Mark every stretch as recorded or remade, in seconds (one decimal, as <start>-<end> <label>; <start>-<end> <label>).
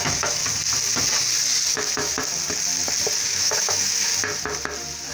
0.0-0.4 remade; 0.4-1.7 recorded; 1.7-2.1 remade; 2.1-3.2 recorded; 3.2-4.1 remade; 4.1-5.1 recorded